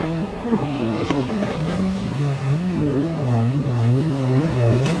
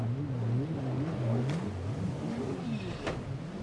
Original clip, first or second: second